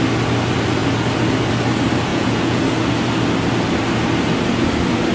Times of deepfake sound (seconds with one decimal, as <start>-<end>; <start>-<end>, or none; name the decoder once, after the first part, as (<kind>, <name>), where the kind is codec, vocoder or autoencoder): 2.1-2.6 (vocoder, Vocos)